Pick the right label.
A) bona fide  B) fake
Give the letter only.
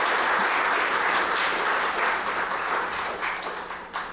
A